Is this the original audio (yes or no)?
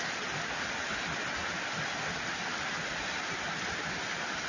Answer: yes